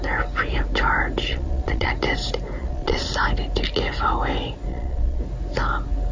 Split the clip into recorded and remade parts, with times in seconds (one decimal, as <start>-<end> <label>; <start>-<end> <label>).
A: 0.0-1.3 recorded; 1.3-1.9 remade; 1.9-2.6 recorded; 2.6-3.1 remade; 3.1-4.7 recorded; 4.7-5.2 remade; 5.2-6.1 recorded